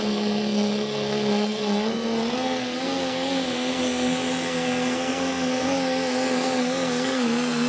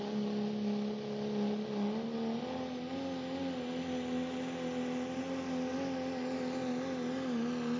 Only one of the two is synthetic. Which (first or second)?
first